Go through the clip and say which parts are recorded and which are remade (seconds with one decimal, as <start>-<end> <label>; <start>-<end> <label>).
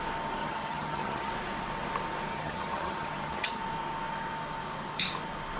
0.0-0.4 recorded; 0.4-1.3 remade; 1.3-2.3 recorded; 2.3-3.6 remade; 3.6-5.6 recorded